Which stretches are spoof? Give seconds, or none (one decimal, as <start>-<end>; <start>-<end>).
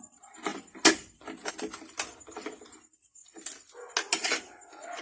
none